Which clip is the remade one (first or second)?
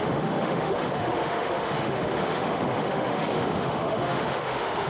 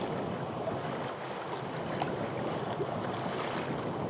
first